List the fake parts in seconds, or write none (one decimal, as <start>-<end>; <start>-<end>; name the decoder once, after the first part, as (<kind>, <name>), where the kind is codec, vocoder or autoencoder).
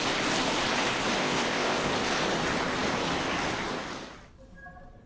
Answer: 1.2-1.9 (codec, ZipCodec)